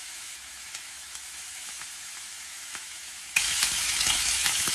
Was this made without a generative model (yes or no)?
no